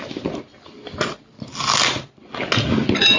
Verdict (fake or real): real